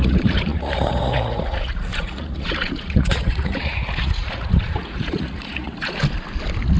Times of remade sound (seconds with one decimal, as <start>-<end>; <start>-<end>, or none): 0.0-6.0